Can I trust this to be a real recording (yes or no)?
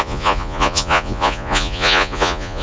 no